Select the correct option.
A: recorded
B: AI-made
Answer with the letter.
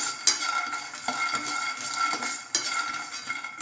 A